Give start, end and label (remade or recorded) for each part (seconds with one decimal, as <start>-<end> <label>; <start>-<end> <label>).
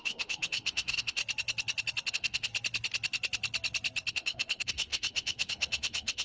0.0-1.2 remade; 1.2-2.1 recorded; 2.1-2.5 remade; 2.5-4.1 recorded; 4.1-6.2 remade